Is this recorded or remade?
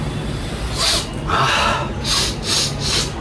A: recorded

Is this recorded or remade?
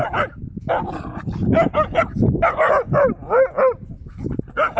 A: recorded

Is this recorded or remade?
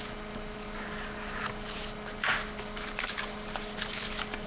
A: recorded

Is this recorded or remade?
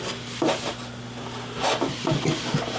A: recorded